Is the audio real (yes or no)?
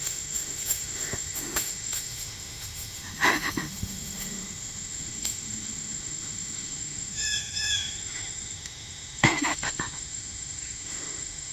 no